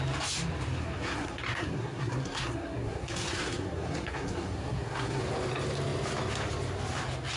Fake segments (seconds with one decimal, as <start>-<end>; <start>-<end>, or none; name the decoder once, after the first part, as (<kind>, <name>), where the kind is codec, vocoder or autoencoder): 0.8-5.2 (codec, SNAC)